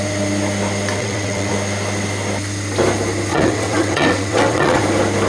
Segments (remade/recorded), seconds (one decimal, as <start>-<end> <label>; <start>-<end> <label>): 0.0-1.0 recorded; 1.0-1.5 remade; 1.5-3.3 recorded; 3.3-4.8 remade; 4.8-5.3 recorded